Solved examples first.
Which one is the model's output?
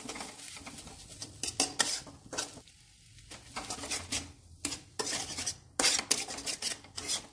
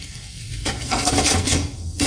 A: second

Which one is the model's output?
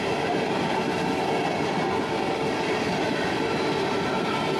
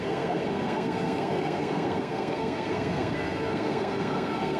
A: second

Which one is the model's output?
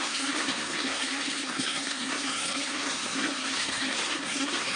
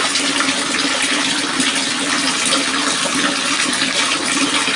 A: first